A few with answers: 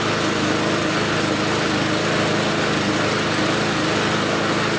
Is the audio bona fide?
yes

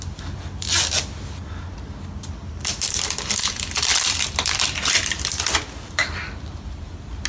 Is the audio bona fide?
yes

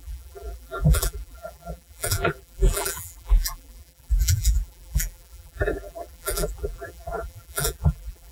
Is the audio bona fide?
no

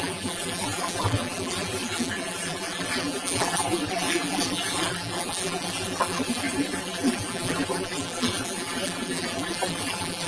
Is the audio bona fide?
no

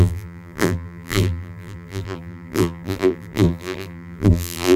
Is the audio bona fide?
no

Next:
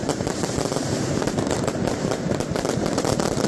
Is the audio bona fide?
no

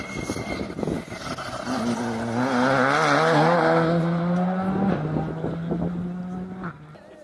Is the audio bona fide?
yes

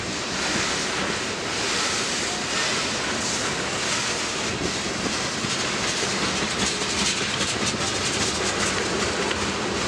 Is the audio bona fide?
yes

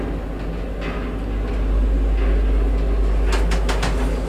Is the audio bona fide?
yes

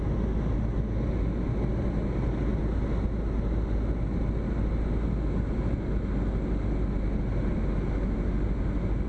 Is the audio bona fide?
yes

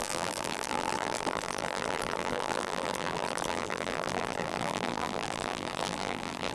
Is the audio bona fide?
no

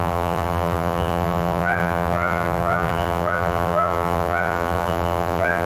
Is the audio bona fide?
no